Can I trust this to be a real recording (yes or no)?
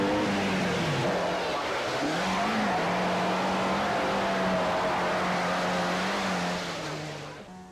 yes